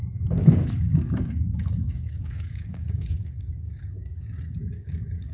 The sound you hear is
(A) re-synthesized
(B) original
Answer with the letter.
A